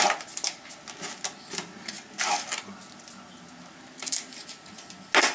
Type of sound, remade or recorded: recorded